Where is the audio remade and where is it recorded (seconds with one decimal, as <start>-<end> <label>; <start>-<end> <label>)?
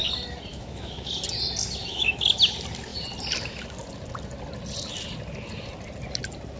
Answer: 0.0-0.5 recorded; 0.5-1.1 remade; 1.1-1.8 recorded; 1.8-2.3 remade; 2.3-6.6 recorded